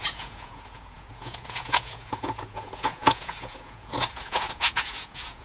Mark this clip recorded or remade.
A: remade